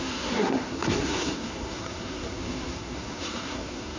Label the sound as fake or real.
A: fake